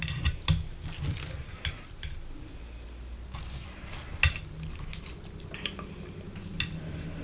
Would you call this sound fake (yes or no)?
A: no